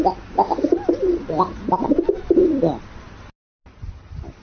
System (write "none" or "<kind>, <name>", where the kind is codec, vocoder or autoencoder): none